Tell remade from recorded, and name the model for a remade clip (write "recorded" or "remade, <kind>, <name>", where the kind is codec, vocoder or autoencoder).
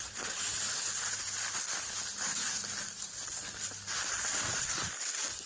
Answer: recorded